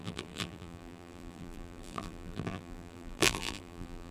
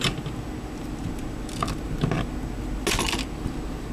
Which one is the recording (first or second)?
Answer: second